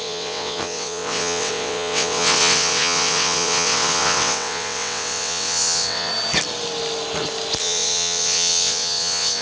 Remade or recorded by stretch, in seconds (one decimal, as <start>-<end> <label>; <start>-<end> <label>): 0.0-6.1 remade; 6.1-7.6 recorded; 7.6-9.4 remade